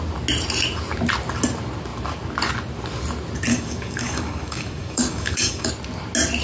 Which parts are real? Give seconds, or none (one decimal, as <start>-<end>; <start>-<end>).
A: 0.0-3.5; 5.7-6.4